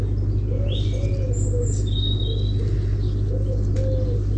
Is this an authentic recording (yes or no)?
yes